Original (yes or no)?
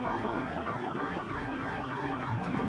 no